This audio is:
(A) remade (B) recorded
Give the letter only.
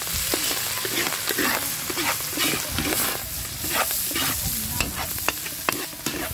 B